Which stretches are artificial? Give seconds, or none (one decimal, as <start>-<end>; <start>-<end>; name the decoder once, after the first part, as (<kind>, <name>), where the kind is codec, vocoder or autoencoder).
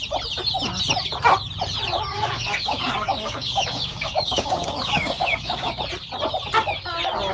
2.1-5.8 (codec, DAC)